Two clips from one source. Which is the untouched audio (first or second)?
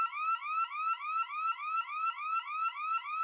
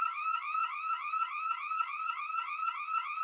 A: first